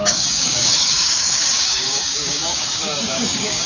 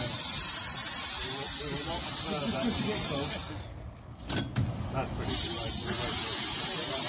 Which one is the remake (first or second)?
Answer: first